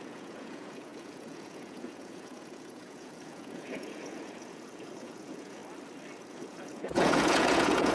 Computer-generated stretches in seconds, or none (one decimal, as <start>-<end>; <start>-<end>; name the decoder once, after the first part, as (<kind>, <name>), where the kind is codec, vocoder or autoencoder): 0.0-5.6 (vocoder, Vocos); 6.3-7.9